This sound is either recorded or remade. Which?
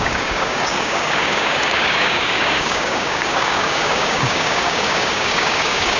remade